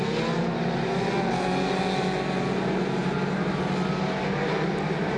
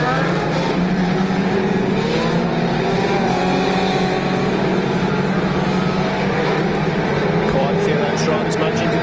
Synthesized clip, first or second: second